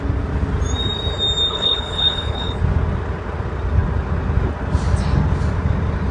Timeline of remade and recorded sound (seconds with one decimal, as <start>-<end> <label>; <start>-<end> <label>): 0.0-1.5 recorded; 1.5-2.6 remade; 2.6-6.1 recorded